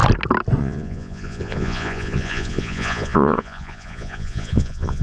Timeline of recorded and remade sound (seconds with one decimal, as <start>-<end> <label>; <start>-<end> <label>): 0.0-0.6 recorded; 0.6-5.0 remade